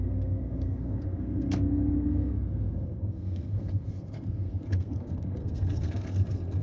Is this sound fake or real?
fake